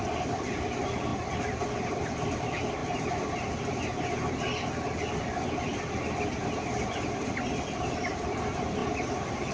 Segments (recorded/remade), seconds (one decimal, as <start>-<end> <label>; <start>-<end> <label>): 0.0-1.1 remade; 1.1-1.9 recorded; 1.9-3.9 remade; 3.9-6.9 recorded; 6.9-8.8 remade; 8.8-9.5 recorded